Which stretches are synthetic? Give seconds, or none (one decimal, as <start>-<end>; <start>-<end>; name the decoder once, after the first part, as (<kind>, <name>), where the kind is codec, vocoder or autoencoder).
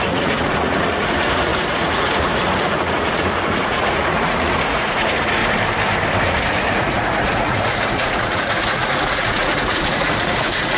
0.0-5.4 (vocoder, Vocos); 6.2-10.8